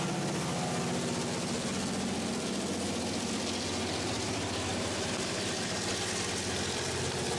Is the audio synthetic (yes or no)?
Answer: no